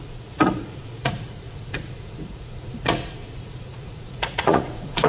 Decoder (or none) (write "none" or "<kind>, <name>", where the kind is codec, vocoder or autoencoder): vocoder, Vocos